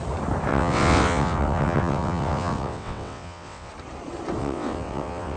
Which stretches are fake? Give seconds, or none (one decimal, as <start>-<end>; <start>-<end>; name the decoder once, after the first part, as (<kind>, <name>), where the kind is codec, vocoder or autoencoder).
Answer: 0.5-3.7 (vocoder, WaveNeXt); 4.4-5.4